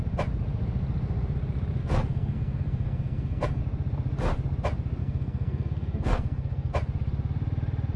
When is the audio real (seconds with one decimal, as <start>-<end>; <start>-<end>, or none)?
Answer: 0.0-1.8; 3.6-5.0; 6.7-8.0